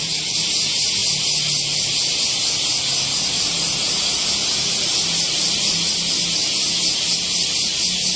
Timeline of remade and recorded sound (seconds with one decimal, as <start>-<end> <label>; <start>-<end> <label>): 0.0-8.2 recorded